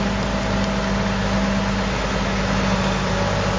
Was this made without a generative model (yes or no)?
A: yes